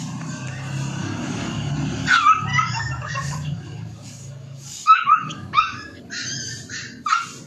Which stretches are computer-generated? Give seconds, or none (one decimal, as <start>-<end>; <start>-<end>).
1.0-1.7; 2.5-6.0